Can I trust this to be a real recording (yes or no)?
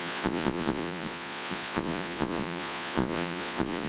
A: no